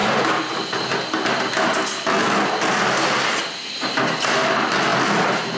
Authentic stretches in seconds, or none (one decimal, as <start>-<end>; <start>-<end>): 0.0-5.6